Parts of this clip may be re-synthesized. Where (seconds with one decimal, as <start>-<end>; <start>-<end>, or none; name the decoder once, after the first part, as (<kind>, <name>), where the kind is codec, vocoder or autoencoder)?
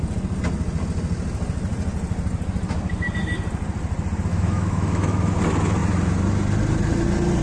4.3-5.3 (autoencoder, DAC-VAE)